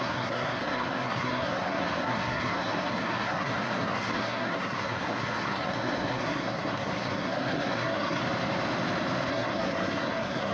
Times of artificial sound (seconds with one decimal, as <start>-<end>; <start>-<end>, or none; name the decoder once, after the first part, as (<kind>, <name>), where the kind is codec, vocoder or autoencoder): 0.0-8.2 (codec, SNAC); 9.3-10.5